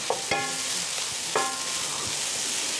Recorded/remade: recorded